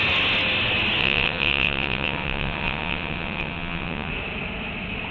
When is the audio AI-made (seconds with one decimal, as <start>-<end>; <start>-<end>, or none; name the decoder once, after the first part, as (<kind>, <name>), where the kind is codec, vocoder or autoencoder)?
1.0-4.1 (vocoder, WaveNeXt)